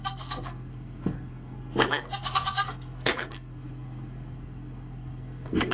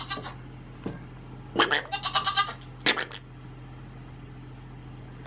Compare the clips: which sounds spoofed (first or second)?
first